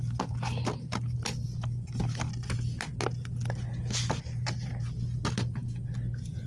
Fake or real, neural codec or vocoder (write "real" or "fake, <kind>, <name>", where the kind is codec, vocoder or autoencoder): real